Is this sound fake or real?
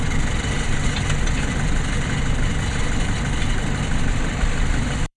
fake